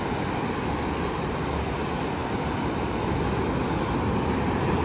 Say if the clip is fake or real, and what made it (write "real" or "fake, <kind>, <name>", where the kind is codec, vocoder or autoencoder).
real